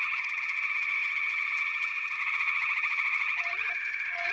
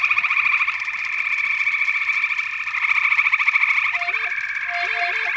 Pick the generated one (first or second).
first